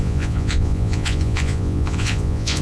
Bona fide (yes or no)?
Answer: no